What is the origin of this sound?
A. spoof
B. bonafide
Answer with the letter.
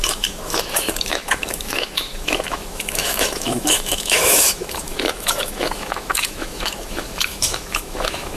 A